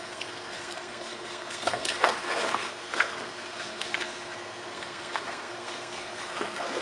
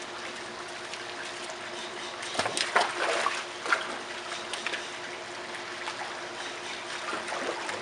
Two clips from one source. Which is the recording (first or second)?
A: second